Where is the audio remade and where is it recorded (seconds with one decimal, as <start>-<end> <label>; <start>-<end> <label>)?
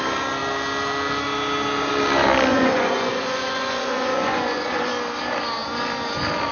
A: 0.0-2.5 recorded; 2.5-4.9 remade; 4.9-6.5 recorded